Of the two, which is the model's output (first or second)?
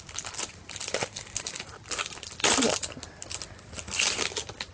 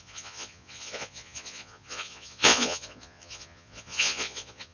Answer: second